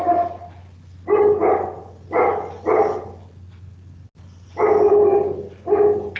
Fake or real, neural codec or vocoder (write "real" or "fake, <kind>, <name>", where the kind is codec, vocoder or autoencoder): real